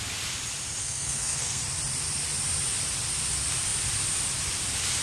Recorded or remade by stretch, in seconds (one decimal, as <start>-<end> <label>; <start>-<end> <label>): 0.0-0.8 recorded; 0.8-1.6 remade; 1.6-5.0 recorded